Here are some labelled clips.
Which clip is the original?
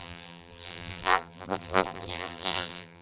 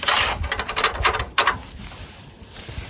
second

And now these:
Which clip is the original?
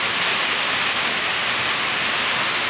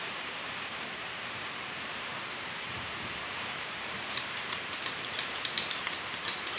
first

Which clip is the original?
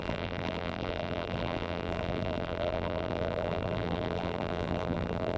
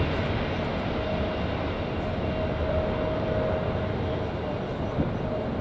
second